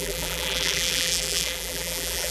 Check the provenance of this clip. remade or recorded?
remade